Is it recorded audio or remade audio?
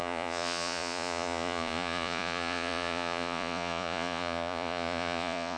remade